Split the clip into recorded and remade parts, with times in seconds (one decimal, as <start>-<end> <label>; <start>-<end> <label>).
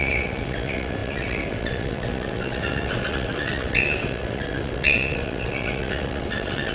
0.0-6.7 remade